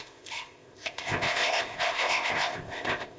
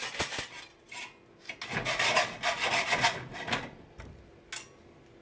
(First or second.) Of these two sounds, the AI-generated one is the first